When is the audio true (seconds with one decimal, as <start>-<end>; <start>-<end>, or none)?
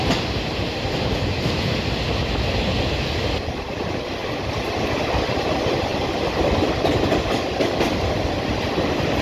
0.0-9.2